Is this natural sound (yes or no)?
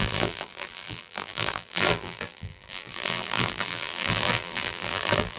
no